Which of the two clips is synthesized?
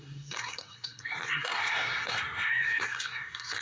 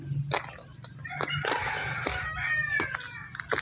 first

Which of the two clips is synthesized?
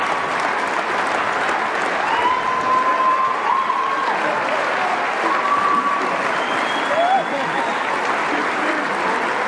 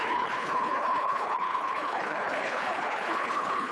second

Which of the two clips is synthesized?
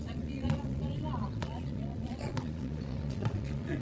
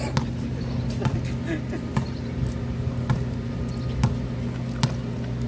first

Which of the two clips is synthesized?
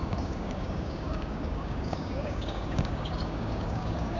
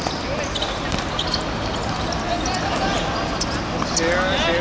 first